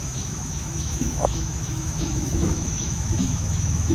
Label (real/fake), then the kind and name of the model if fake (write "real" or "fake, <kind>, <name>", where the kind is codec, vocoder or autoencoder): fake, autoencoder, DAC-VAE